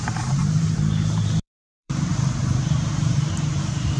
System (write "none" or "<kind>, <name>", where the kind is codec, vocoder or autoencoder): vocoder, BigVGAN v2